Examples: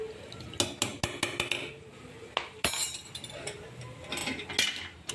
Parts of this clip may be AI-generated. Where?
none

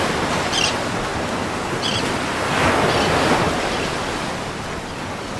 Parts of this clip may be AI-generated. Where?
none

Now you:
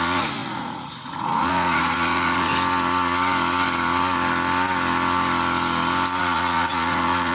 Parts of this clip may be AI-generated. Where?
0.0-2.5 (vocoder, Vocos); 6.2-7.3

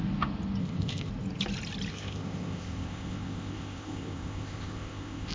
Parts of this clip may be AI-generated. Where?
0.6-1.1 (codec, ZipCodec); 1.9-5.3

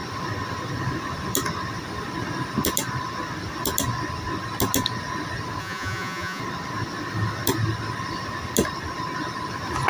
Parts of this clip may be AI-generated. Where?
5.6-6.4 (vocoder, Vocos)